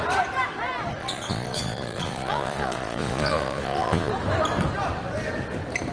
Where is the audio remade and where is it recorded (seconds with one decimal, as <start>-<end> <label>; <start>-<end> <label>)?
0.0-1.0 recorded; 1.0-4.1 remade; 4.1-5.9 recorded